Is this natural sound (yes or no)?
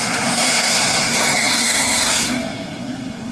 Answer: no